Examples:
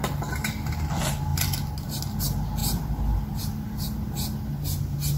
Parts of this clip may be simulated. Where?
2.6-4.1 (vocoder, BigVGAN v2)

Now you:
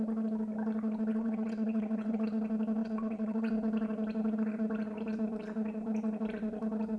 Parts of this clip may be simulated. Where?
1.1-2.4 (vocoder, WaveNeXt); 2.8-3.5

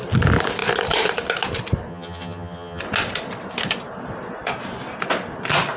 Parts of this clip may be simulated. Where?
1.9-2.8 (vocoder, HiFi-GAN)

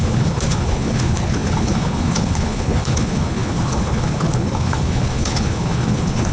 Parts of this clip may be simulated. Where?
0.0-6.3 (codec, HILCodec)

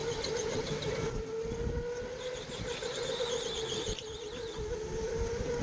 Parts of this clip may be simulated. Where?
none